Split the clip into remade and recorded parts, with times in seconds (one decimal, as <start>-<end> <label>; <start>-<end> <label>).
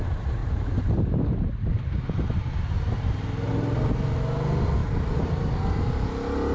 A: 0.0-0.4 recorded; 0.4-3.5 remade; 3.5-4.8 recorded; 4.8-5.5 remade; 5.5-6.5 recorded